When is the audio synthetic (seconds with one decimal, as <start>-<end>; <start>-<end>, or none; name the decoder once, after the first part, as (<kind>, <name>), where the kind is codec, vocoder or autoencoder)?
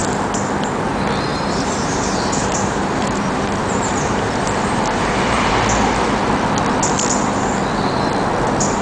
1.3-5.5 (vocoder, BigVGAN v2)